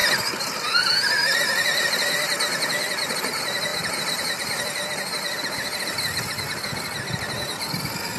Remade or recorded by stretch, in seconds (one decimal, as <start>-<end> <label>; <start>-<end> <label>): 0.0-8.2 recorded